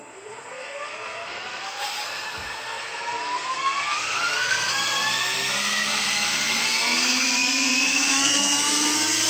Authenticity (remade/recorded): remade